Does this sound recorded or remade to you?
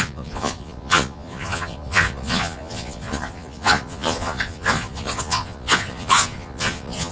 remade